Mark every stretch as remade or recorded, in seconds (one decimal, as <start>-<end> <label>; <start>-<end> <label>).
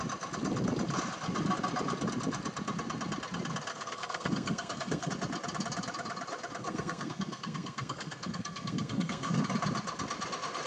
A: 0.0-3.7 recorded; 3.7-5.1 remade; 5.1-6.6 recorded; 6.6-9.4 remade; 9.4-10.7 recorded